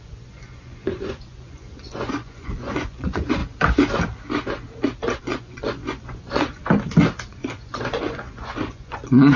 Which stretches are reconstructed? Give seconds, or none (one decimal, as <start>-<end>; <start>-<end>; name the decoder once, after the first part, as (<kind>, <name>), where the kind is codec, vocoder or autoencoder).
0.0-3.4 (vocoder, Vocos); 5.2-6.6; 7.3-9.4